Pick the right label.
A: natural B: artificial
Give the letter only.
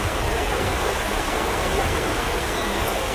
B